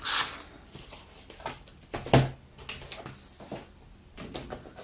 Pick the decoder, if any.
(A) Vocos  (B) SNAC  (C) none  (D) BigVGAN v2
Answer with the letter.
C